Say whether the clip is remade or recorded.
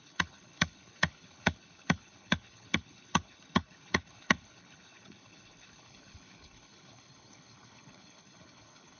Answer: remade